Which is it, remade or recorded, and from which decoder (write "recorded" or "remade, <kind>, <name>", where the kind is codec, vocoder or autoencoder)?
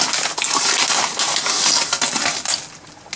recorded